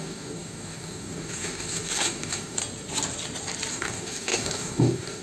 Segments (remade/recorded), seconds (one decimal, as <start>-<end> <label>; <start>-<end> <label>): 0.0-2.6 remade; 2.6-3.7 recorded; 3.7-5.2 remade